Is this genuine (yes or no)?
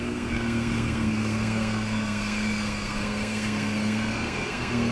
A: no